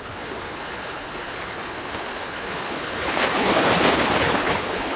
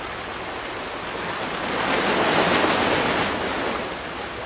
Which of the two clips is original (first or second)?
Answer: second